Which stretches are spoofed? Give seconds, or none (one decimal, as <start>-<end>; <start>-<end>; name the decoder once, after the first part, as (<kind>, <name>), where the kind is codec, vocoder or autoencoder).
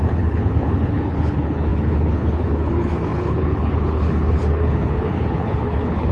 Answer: 0.0-6.1 (codec, HILCodec)